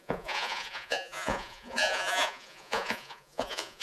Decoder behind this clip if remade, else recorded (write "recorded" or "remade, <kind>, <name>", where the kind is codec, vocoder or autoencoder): remade, vocoder, Vocos